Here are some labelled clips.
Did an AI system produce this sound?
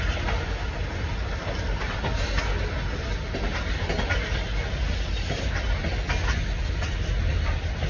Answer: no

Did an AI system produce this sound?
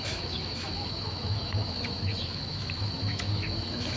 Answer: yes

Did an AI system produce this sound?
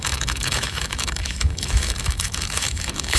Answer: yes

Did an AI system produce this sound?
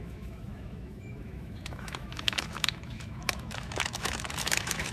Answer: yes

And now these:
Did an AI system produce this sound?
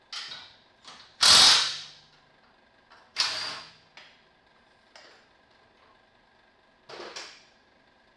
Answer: no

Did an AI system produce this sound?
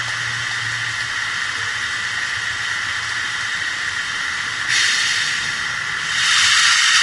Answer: no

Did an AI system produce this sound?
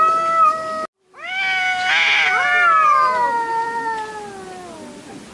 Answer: no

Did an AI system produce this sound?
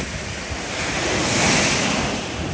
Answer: no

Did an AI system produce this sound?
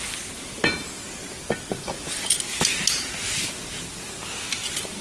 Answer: no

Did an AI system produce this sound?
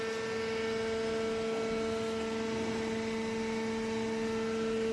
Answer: no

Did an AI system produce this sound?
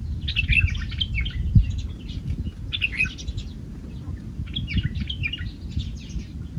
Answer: no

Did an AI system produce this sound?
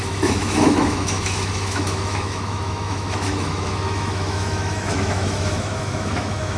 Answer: yes